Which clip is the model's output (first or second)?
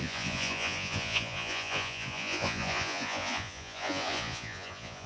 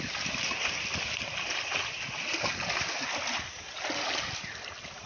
first